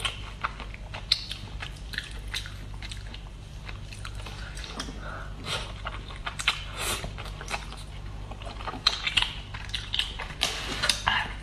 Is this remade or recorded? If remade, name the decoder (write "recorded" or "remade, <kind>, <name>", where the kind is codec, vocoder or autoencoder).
recorded